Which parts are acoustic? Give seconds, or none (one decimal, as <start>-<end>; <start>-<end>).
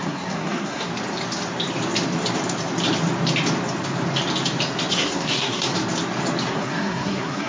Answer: 0.9-4.9; 5.7-6.5